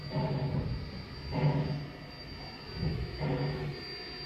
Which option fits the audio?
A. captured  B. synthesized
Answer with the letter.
A